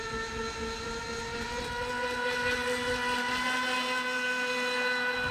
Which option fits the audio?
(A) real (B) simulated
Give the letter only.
A